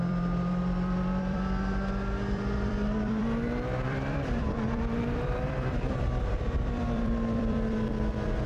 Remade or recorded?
remade